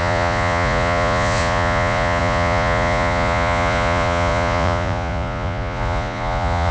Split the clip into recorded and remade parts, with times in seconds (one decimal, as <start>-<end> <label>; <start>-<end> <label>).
0.0-6.7 remade